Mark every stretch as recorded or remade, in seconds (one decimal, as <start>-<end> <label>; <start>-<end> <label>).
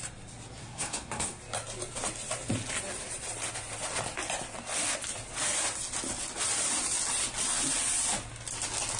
0.0-0.6 recorded; 0.6-1.4 remade; 1.4-9.0 recorded